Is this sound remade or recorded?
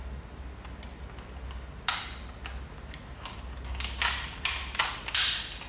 recorded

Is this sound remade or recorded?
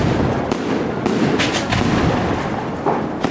recorded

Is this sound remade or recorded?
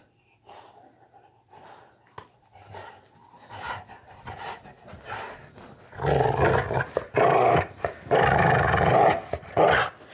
recorded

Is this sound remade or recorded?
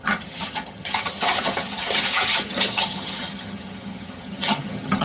remade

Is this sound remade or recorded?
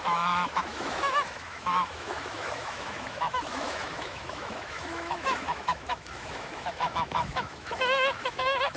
remade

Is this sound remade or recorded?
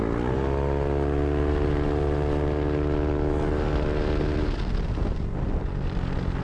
recorded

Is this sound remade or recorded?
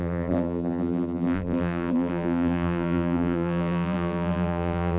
remade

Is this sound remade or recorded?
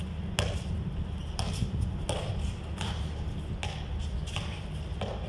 recorded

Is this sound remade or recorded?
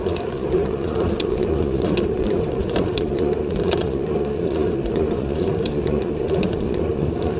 remade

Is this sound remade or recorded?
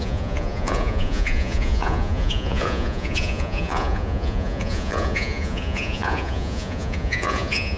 remade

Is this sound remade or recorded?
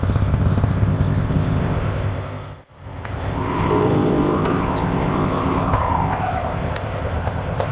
remade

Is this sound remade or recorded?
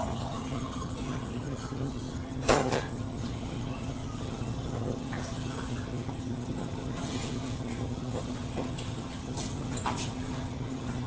remade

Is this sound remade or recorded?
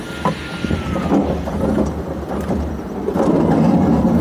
recorded